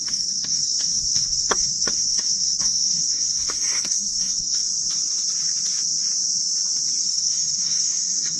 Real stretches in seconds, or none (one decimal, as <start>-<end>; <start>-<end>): 4.6-7.0